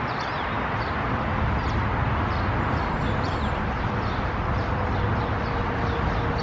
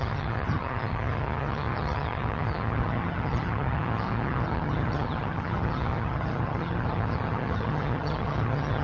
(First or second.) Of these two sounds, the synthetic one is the second